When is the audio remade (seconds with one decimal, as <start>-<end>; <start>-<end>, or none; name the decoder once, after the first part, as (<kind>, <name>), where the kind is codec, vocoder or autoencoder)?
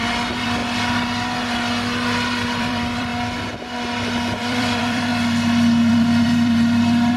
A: 0.0-0.6 (vocoder, BigVGAN v2); 2.6-3.1; 4.4-5.1; 5.9-7.2